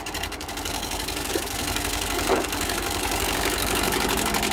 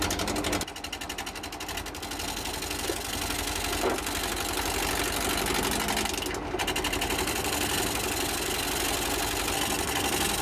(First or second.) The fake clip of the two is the first